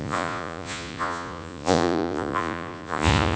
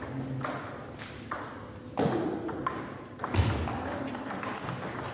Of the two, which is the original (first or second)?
second